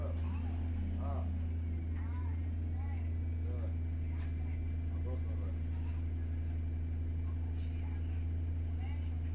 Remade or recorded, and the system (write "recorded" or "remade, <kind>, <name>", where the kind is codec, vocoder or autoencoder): recorded